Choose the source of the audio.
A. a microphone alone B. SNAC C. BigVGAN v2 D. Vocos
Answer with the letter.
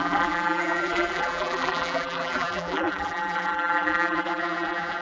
C